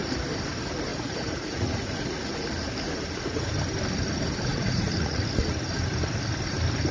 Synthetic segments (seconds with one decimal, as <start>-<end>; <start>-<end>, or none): 0.9-2.3; 4.5-5.2